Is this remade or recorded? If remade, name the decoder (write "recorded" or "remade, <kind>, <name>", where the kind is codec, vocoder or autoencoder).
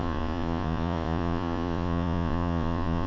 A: remade, vocoder, Vocos